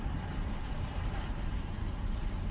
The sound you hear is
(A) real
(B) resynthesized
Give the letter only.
B